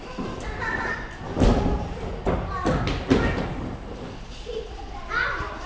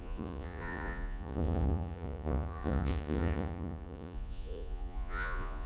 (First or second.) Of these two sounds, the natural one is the first